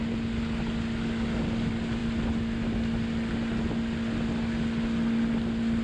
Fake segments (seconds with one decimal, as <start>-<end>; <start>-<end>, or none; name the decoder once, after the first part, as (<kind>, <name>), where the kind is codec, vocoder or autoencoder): none